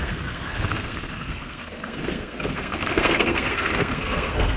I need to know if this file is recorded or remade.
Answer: remade